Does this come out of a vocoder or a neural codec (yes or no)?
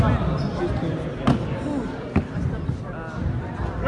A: no